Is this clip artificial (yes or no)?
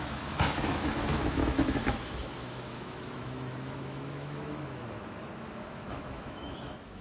yes